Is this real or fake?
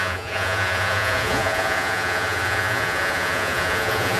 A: fake